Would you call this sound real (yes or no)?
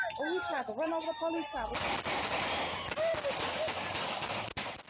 yes